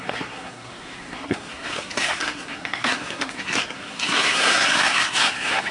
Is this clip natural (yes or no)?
no